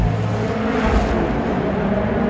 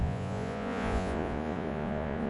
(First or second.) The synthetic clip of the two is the second